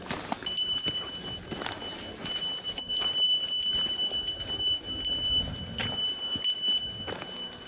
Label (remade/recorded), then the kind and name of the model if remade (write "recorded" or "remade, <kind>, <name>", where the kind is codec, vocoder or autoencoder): recorded